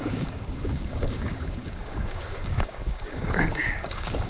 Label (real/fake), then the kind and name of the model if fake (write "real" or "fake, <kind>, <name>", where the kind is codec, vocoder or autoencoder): fake, codec, DAC